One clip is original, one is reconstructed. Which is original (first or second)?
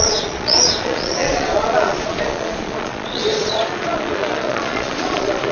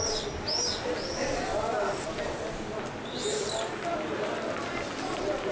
second